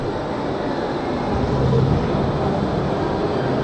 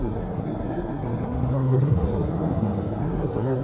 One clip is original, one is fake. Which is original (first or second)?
first